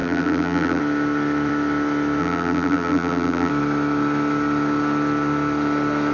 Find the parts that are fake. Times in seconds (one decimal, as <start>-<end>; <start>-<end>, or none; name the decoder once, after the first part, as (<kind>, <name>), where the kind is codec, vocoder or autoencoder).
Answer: 0.0-0.8 (vocoder, BigVGAN v2); 2.2-3.5